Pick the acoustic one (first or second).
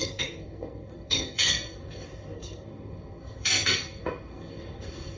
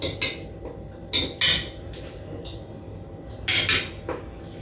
second